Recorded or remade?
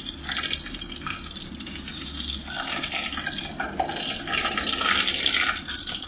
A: recorded